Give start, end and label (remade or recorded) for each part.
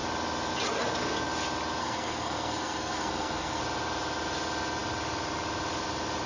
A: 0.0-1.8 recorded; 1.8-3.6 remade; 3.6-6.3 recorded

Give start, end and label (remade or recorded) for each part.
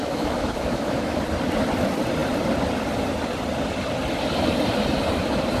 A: 0.0-1.2 remade; 1.2-5.6 recorded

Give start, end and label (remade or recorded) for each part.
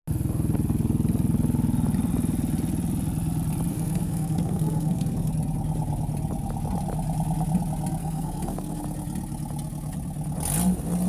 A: 0.0-3.7 recorded; 3.7-5.3 remade; 5.3-8.0 recorded; 8.0-8.8 remade; 8.8-11.1 recorded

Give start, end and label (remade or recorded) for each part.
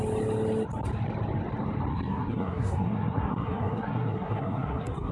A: 0.0-1.9 recorded; 1.9-5.1 remade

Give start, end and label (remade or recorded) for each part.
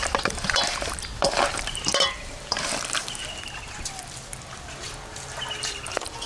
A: 0.0-3.2 remade; 3.2-5.6 recorded; 5.6-6.3 remade